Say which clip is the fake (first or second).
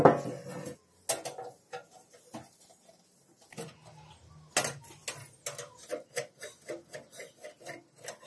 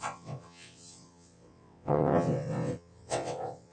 second